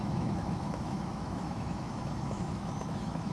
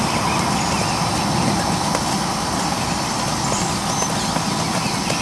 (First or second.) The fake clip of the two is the first